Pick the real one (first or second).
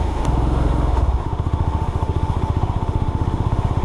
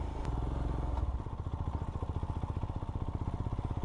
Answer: second